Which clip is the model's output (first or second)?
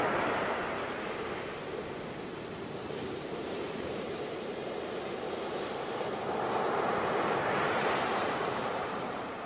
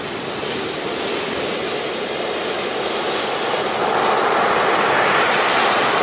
first